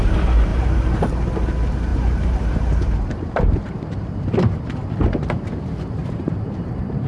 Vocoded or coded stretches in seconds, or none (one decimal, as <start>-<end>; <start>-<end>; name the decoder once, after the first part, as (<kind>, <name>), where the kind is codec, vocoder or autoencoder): 0.5-1.0 (vocoder, BigVGAN v2); 1.9-5.5; 6.0-7.1